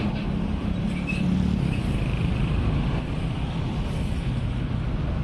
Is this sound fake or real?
real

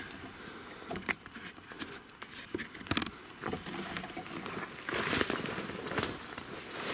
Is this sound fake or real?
real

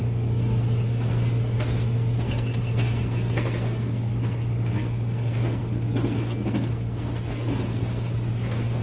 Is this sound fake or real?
fake